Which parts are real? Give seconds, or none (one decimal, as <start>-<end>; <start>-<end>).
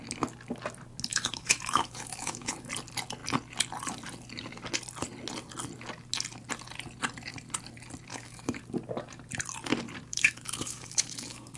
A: 0.0-1.1; 2.7-8.1; 8.6-10.1